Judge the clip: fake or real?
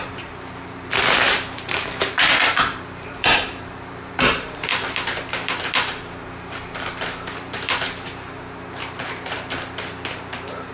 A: fake